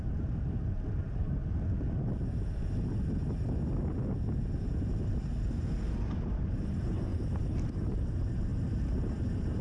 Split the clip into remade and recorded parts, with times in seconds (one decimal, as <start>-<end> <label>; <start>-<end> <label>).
0.0-1.4 remade; 1.4-5.9 recorded; 5.9-9.6 remade